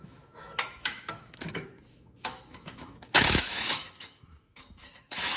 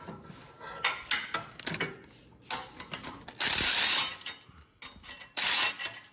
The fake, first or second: first